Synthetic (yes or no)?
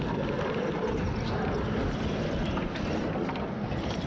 no